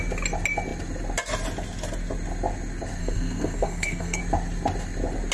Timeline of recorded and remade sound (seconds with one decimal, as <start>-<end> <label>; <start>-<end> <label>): 0.0-3.0 recorded; 3.0-4.2 remade; 4.2-5.3 recorded